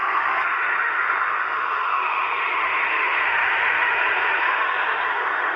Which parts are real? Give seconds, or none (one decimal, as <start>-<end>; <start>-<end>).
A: none